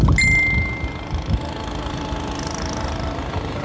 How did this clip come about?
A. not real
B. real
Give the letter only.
B